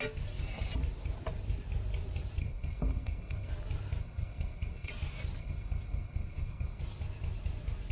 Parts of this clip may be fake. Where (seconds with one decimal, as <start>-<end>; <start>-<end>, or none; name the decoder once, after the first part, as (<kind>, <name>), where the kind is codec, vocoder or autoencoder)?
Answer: 2.4-3.5 (codec, SNAC); 4.0-4.9; 5.4-6.8